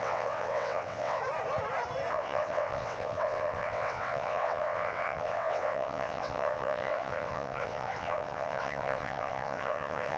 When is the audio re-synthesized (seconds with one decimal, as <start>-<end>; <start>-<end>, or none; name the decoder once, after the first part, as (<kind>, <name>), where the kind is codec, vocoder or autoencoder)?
0.0-1.2 (vocoder, WaveNeXt); 2.1-10.2